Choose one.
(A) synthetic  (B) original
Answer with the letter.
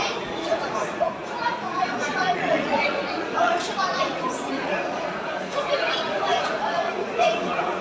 A